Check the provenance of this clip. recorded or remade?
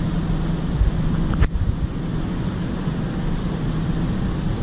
recorded